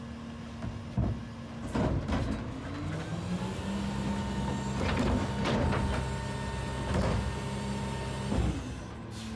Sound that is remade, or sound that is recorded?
recorded